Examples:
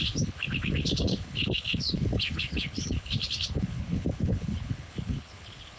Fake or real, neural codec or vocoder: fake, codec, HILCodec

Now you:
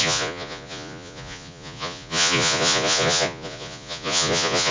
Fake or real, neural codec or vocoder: fake, vocoder, Vocos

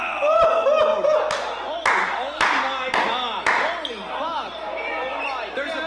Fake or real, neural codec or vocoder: real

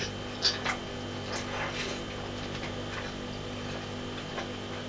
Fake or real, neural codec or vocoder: real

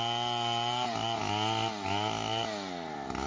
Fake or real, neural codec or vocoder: real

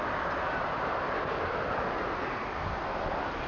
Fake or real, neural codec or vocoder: real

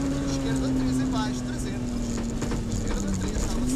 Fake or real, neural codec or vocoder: real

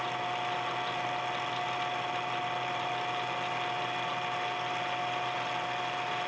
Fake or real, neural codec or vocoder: real